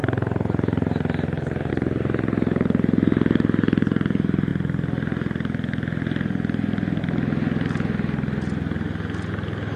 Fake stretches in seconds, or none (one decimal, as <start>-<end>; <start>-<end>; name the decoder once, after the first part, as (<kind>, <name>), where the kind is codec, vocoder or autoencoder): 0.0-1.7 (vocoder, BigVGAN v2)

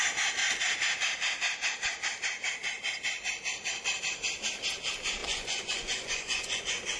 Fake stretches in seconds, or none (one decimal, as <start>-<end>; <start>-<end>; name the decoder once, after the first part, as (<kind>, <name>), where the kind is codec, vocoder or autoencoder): 5.2-6.6 (vocoder, Vocos)

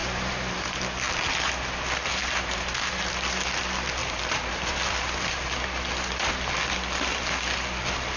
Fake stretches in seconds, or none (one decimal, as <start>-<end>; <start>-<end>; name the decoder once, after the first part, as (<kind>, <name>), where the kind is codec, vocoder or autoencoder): 0.0-0.8 (vocoder, BigVGAN v2); 2.1-3.1; 4.0-4.7

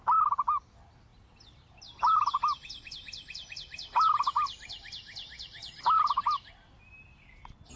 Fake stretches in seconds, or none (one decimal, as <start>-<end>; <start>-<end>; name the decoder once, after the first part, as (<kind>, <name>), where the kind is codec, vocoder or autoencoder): none

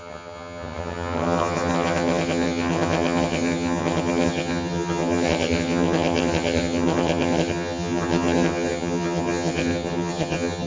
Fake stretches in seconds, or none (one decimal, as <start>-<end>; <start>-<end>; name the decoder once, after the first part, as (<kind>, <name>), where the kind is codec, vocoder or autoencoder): 0.0-10.7 (vocoder, HiFi-GAN)

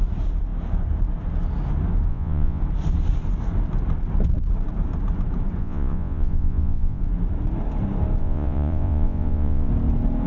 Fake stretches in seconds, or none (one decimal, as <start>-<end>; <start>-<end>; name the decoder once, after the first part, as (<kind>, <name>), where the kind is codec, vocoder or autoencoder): 2.1-2.6 (vocoder, Vocos); 5.6-7.0; 8.2-9.7

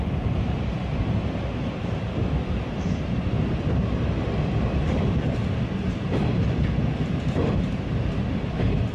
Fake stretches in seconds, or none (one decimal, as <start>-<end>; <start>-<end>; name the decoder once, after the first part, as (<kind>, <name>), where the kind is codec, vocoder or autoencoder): 0.0-8.9 (vocoder, BigVGAN v2)